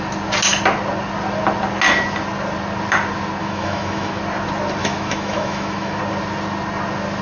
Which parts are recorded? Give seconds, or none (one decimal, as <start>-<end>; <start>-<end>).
0.0-3.4; 4.2-4.8; 6.0-7.2